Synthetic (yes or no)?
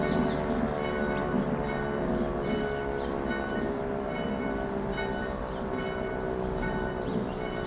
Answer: no